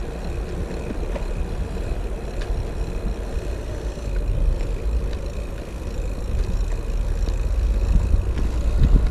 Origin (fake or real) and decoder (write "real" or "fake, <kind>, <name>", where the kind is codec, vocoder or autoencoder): real